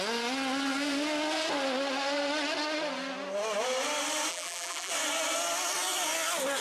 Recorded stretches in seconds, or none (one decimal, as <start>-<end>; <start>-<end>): 0.0-4.3; 4.9-6.6